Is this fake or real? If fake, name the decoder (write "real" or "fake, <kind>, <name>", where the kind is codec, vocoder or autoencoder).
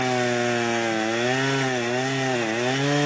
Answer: real